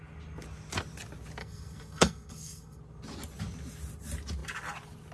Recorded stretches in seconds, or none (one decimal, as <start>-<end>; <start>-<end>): 0.0-1.4; 2.8-5.1